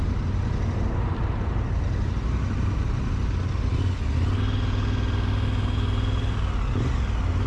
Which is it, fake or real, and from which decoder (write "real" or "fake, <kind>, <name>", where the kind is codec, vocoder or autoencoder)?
real